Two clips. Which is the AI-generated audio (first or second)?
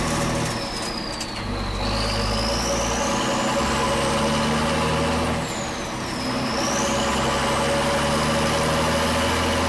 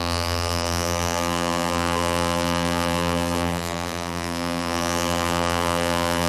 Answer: second